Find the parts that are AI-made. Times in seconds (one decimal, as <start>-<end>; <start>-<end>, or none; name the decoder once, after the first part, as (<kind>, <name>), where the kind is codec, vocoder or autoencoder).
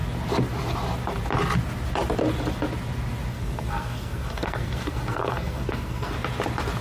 3.3-6.1 (codec, SNAC)